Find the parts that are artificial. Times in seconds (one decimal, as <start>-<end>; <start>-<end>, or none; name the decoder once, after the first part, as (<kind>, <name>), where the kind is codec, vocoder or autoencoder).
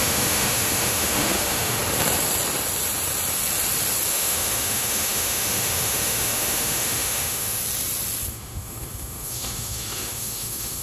0.0-1.8 (autoencoder, DAC-VAE); 4.1-7.6; 8.3-10.8